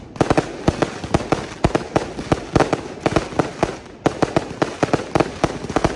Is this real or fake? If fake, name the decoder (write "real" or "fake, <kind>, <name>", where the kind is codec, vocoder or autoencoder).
real